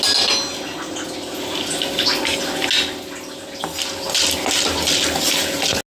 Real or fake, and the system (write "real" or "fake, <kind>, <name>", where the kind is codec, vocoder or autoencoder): real